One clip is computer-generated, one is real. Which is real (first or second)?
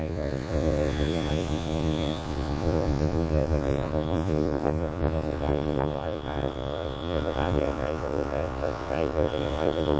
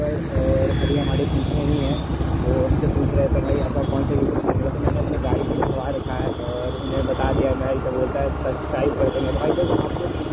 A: second